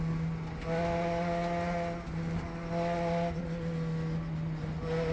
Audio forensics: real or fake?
real